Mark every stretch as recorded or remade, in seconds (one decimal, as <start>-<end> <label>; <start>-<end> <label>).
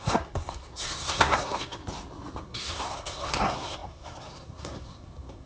0.0-1.8 remade; 1.8-2.4 recorded; 2.4-5.5 remade